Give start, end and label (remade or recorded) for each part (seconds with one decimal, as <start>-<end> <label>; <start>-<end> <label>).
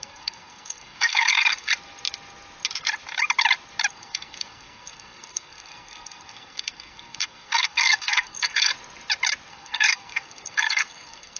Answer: 0.0-1.7 remade; 1.7-3.9 recorded; 3.9-8.7 remade; 8.7-9.5 recorded; 9.5-11.4 remade